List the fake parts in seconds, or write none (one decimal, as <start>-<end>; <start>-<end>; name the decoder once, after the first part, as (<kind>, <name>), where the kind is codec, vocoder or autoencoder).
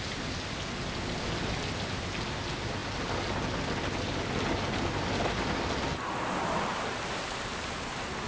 none